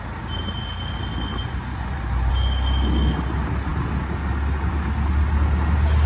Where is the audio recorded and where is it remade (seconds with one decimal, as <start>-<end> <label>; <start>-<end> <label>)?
0.0-1.4 recorded; 1.4-2.3 remade; 2.3-6.1 recorded